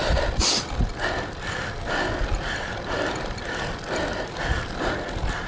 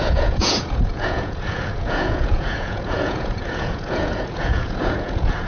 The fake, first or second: second